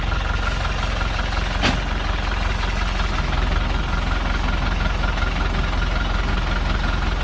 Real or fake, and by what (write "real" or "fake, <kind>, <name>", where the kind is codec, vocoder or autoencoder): real